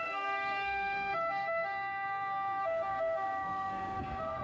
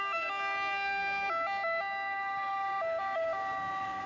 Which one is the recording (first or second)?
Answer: second